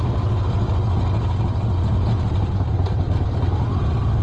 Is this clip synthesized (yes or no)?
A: no